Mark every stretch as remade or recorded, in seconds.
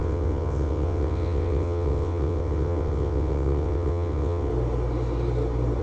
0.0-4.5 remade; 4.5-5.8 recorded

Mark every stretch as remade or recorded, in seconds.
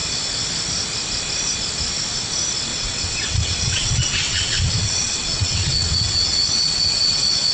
0.0-2.7 recorded; 2.7-7.5 remade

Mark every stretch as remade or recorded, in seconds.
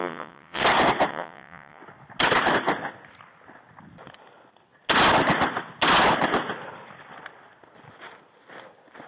0.0-0.6 remade; 0.6-1.1 recorded; 1.1-1.8 remade; 1.8-9.1 recorded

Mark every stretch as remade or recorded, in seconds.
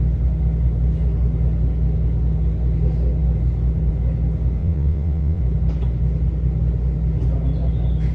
0.0-4.6 recorded; 4.6-5.4 remade; 5.4-8.1 recorded